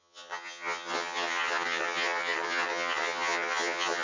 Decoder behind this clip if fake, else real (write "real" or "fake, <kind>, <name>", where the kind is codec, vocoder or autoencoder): fake, vocoder, HiFi-GAN